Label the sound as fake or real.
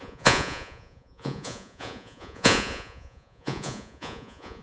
fake